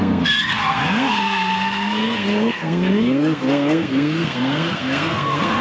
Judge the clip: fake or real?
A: fake